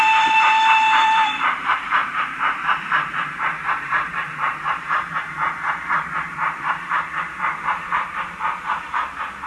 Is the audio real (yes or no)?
no